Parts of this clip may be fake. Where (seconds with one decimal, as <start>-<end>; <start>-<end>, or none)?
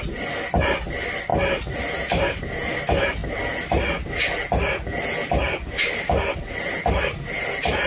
1.3-2.3